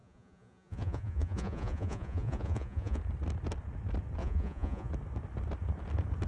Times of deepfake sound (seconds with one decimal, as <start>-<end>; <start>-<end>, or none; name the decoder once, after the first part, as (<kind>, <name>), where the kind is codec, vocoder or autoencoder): 0.0-3.0 (vocoder, Vocos); 4.2-4.9

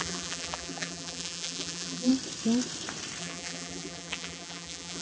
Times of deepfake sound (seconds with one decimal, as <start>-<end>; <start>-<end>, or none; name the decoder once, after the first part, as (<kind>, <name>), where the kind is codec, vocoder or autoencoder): 0.0-2.1 (vocoder, BigVGAN v2); 3.2-5.0

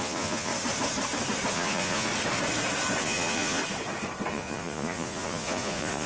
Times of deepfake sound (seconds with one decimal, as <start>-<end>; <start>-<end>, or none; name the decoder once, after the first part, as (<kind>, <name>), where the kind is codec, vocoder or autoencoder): 0.0-0.5 (vocoder, Vocos); 1.5-2.1; 3.0-3.6; 4.3-6.1

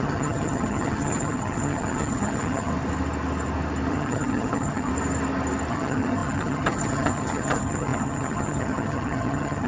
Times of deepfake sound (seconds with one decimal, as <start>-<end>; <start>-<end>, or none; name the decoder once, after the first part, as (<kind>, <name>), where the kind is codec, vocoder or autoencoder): 0.0-2.7 (vocoder, HiFi-GAN); 3.9-4.9; 5.7-9.7

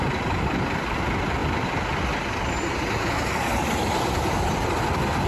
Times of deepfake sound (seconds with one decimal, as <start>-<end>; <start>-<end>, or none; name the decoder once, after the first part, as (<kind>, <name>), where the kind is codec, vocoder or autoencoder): none